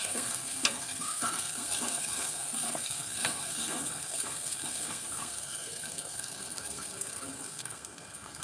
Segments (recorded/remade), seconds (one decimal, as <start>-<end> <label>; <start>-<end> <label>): 0.0-8.4 remade